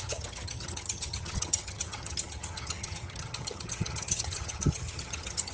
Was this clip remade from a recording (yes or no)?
yes